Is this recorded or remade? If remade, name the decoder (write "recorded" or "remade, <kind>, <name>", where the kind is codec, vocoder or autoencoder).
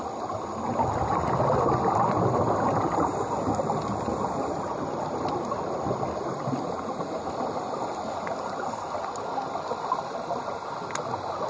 recorded